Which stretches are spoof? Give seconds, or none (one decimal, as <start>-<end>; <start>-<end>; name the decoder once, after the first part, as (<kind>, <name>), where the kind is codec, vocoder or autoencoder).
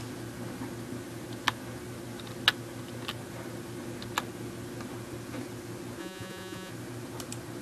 6.0-6.7 (vocoder, Vocos)